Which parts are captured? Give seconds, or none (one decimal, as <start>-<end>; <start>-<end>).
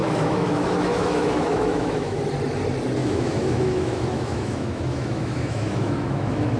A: 2.2-3.0